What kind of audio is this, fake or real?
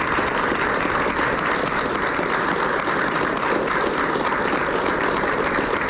real